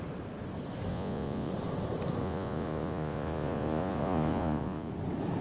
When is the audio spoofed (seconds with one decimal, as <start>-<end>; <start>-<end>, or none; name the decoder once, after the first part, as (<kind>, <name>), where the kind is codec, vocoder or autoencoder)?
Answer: 0.9-1.5 (vocoder, Vocos); 2.2-4.9